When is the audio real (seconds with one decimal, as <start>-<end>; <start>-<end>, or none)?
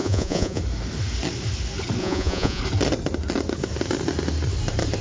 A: 0.6-2.0; 2.6-5.0